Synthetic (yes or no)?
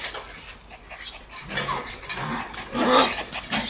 no